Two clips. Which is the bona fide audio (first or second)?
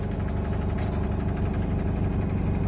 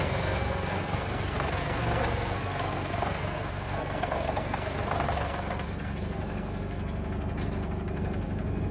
first